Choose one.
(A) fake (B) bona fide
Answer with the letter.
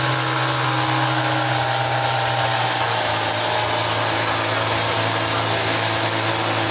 B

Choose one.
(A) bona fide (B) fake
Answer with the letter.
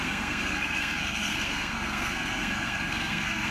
B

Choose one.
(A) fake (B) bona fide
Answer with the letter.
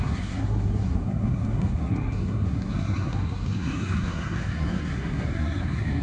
A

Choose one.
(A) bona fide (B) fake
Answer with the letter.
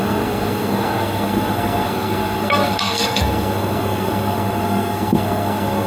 B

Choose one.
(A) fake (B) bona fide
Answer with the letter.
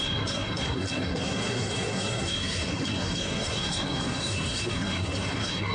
A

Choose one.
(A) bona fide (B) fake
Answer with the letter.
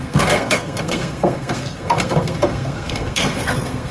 B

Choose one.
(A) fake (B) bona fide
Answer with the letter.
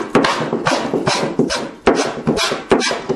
B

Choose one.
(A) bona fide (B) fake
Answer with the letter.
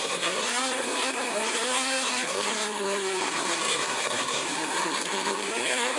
B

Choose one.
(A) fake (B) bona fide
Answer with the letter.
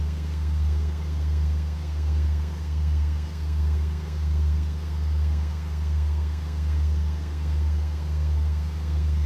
A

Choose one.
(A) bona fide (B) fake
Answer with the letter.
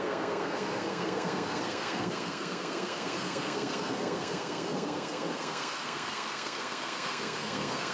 B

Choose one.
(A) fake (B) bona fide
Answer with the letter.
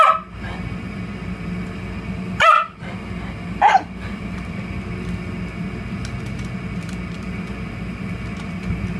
B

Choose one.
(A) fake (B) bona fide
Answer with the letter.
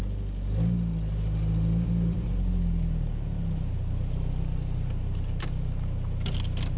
B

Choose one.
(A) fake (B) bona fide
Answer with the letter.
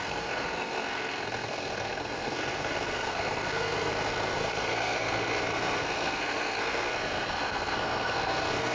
A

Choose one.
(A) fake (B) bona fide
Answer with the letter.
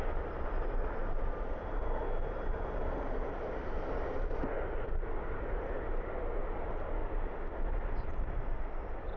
B